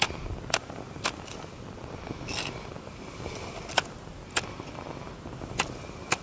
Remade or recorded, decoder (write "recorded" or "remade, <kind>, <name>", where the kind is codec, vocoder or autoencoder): recorded